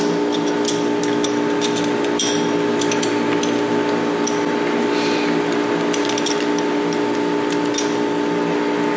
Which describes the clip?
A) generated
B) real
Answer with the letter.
B